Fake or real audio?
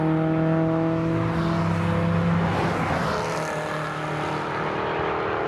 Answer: real